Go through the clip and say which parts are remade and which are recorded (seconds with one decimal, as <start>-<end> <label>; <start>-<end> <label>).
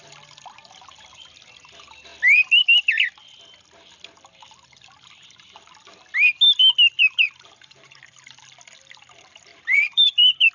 0.0-7.0 recorded; 7.0-8.4 remade; 8.4-9.5 recorded; 9.5-10.5 remade